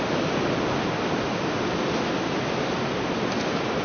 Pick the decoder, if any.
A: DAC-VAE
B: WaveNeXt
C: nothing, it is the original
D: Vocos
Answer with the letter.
C